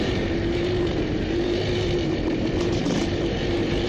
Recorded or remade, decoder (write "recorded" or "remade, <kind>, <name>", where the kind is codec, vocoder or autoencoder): remade, vocoder, BigVGAN v2